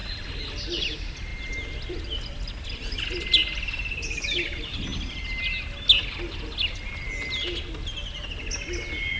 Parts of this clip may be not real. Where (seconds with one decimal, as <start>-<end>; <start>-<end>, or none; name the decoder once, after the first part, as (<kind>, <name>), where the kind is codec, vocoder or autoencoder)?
0.8-4.9 (vocoder, BigVGAN v2)